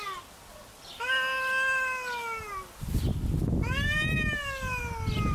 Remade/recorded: recorded